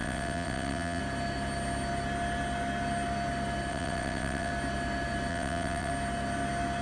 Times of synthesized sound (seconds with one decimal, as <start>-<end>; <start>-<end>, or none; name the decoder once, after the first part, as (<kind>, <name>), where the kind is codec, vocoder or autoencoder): 0.0-1.0 (vocoder, WaveNeXt); 3.7-4.5; 5.3-5.9